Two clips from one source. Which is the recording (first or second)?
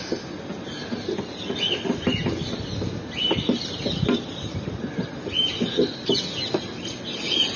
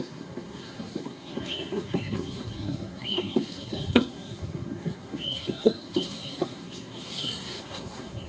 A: first